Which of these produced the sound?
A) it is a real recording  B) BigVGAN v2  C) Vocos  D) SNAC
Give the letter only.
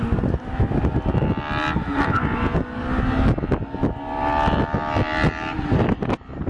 A